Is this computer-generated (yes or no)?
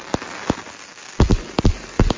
no